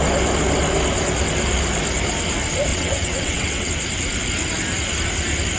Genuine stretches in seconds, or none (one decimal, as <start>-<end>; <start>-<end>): 0.0-2.7; 3.7-5.6